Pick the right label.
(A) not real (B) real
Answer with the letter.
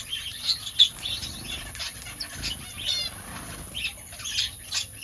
B